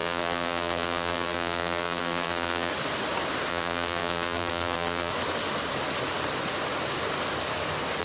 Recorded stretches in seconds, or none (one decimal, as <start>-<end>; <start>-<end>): 2.7-3.5; 5.1-8.0